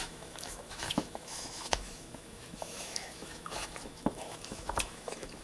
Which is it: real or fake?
fake